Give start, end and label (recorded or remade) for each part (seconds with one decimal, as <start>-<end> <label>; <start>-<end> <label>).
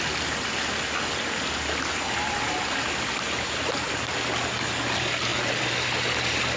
0.0-6.6 recorded